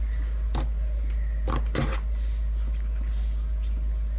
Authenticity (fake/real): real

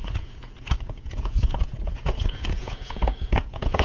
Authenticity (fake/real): fake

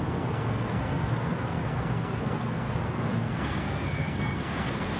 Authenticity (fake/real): fake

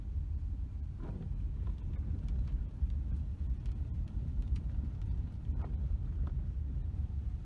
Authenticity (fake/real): fake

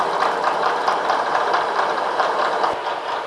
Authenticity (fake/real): fake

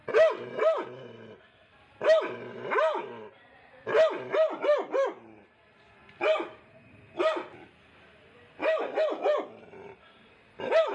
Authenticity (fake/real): real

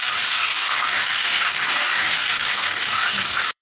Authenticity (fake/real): fake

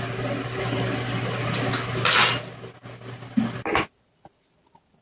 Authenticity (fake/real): real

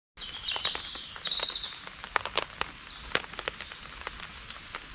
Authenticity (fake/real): real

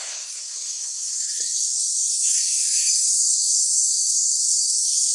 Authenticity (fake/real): fake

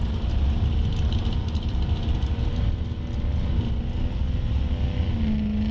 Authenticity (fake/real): real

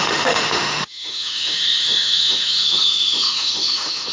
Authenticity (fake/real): fake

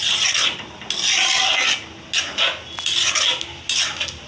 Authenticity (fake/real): real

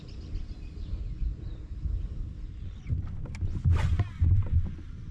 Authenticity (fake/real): real